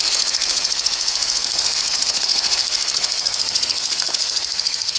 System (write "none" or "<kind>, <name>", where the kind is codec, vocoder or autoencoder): codec, SNAC